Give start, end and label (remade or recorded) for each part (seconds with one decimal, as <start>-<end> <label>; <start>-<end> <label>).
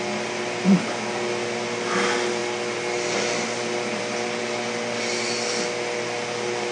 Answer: 0.0-6.7 recorded